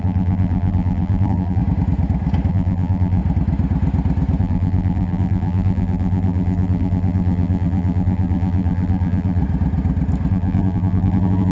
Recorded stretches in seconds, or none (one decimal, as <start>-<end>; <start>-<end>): 1.6-2.5; 3.2-4.4; 9.4-10.3